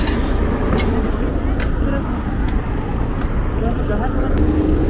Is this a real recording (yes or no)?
yes